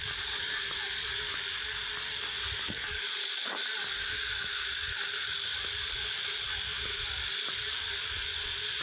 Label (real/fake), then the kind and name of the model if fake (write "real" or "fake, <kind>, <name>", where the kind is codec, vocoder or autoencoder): real